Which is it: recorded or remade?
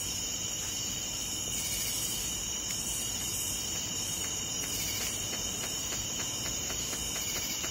remade